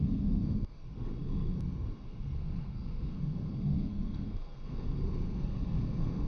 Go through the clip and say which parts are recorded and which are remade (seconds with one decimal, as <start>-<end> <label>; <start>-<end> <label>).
0.0-6.3 remade